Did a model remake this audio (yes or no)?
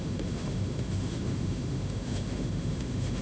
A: yes